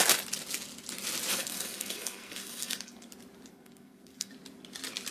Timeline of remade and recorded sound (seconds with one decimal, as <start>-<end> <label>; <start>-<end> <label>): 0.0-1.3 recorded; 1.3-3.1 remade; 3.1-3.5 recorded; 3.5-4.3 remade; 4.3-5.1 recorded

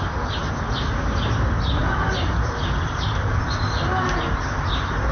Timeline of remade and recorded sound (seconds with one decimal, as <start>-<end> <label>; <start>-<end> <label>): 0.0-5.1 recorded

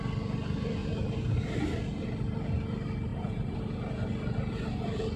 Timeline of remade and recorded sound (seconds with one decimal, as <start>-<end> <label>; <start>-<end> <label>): 0.0-0.8 recorded; 0.8-1.8 remade; 1.8-3.1 recorded; 3.1-3.6 remade; 3.6-5.2 recorded

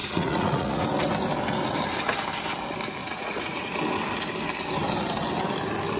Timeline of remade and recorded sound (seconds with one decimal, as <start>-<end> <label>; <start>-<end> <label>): 0.0-0.8 remade; 0.8-3.0 recorded; 3.0-3.8 remade; 3.8-6.0 recorded

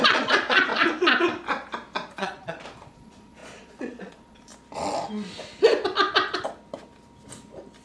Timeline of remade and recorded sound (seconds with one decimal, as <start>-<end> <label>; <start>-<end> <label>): 0.0-0.7 remade; 0.7-2.1 recorded; 2.1-4.5 remade; 4.5-7.8 recorded

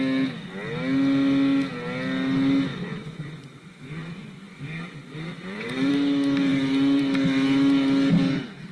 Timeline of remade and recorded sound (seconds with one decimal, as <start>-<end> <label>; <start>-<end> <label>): 0.0-2.7 recorded; 2.7-5.9 remade; 5.9-8.7 recorded

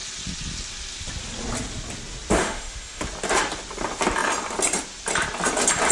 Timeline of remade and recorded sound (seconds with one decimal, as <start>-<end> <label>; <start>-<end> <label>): 0.0-2.4 recorded; 2.4-3.0 remade; 3.0-5.9 recorded

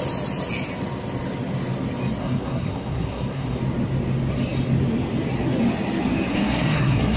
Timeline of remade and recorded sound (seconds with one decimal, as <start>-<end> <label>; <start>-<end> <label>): 0.0-2.2 recorded; 2.2-3.6 remade; 3.6-6.3 recorded; 6.3-7.2 remade